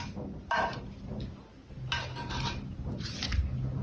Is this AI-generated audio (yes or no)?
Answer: no